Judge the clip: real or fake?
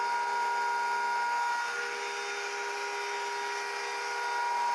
real